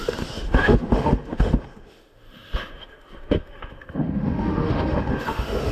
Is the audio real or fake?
fake